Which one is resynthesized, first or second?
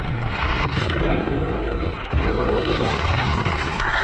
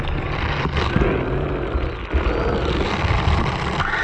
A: first